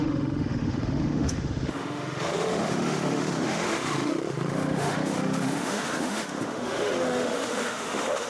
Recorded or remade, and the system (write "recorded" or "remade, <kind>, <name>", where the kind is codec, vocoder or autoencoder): remade, autoencoder, DAC-VAE